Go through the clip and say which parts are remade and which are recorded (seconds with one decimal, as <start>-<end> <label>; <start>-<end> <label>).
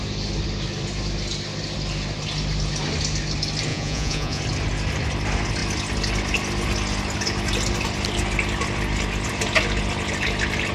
0.0-3.7 recorded; 3.7-4.4 remade; 4.4-10.7 recorded